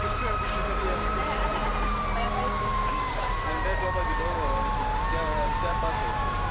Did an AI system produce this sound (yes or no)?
yes